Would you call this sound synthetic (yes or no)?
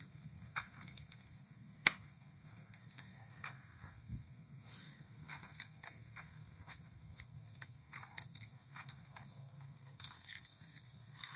yes